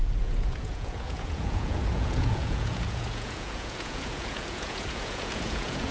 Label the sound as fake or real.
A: fake